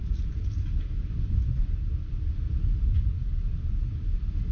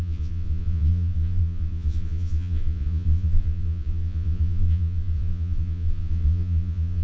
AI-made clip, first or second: second